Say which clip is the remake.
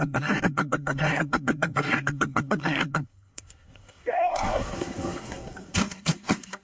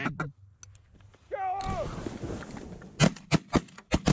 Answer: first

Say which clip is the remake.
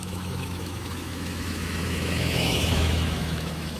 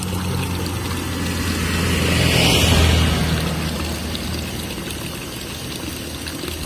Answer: first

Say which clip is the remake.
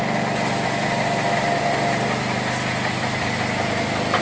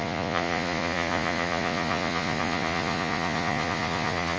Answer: second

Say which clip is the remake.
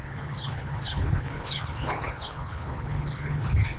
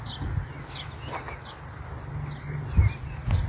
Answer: first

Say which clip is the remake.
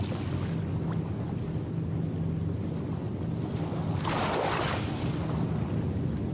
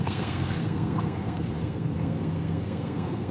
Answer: second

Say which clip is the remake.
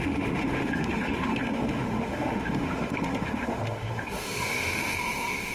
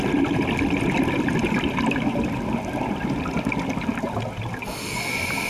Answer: first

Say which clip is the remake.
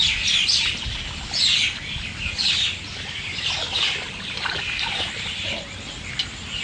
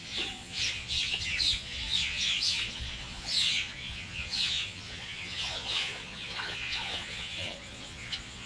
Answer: second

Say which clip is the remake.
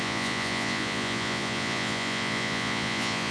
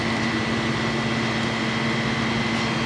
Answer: first